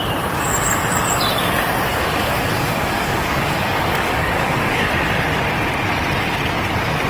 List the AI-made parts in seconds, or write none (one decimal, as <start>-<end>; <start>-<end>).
1.9-4.9